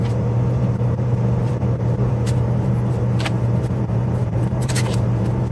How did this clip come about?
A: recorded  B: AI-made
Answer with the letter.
B